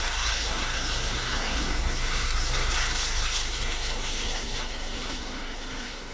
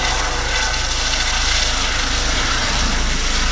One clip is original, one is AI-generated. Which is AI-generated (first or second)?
first